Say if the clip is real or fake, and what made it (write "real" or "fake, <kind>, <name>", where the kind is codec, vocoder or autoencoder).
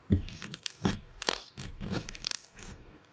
fake, codec, DAC